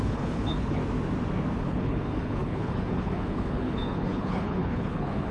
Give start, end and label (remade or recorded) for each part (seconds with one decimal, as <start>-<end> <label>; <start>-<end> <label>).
0.0-0.8 remade; 0.8-1.6 recorded; 1.6-5.3 remade